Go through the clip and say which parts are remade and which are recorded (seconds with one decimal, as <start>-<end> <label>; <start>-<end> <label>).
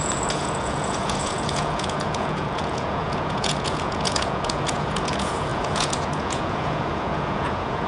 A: 0.0-7.9 remade